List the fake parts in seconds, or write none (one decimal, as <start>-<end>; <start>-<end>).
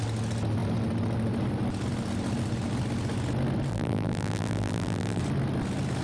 3.7-5.2